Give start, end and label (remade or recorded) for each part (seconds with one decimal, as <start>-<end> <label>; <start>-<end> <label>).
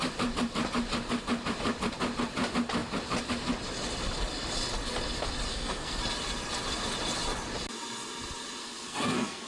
0.0-5.5 recorded; 5.5-6.0 remade; 6.0-8.6 recorded; 8.6-9.5 remade